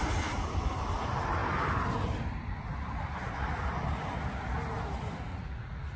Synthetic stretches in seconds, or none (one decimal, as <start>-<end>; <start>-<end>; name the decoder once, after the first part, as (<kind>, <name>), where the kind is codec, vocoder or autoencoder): 5.3-6.0 (vocoder, Vocos)